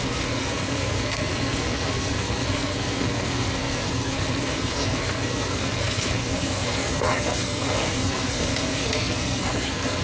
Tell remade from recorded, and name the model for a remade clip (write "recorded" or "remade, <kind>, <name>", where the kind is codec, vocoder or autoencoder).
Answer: remade, codec, SNAC